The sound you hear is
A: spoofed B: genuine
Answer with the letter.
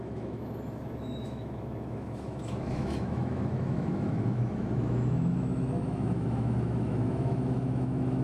A